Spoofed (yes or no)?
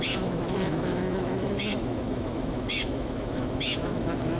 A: yes